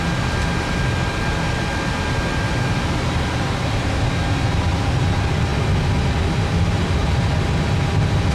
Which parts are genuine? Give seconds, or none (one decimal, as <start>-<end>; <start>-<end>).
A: 0.0-8.3